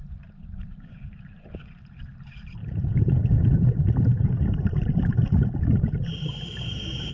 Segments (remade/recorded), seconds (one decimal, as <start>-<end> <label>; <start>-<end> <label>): 0.0-7.1 remade